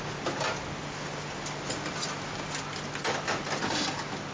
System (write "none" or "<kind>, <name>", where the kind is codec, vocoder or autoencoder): none